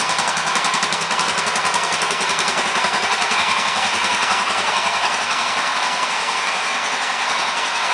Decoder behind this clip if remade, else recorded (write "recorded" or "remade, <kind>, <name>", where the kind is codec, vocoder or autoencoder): remade, codec, SNAC